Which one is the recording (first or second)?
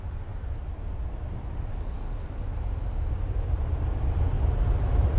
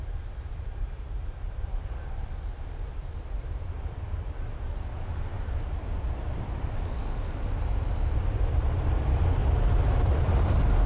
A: first